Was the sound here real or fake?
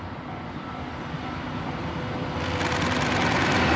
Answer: real